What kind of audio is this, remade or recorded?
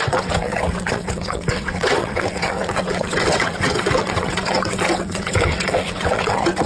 remade